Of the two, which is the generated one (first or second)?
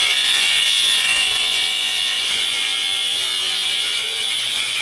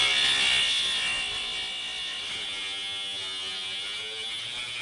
first